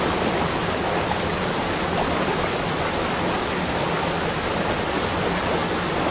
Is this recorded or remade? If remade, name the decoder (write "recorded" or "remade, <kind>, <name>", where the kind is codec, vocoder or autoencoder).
recorded